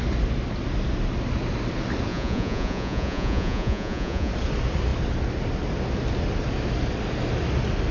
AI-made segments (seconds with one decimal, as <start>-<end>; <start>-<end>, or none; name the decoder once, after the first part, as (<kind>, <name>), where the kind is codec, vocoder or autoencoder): 2.1-4.3 (vocoder, Vocos)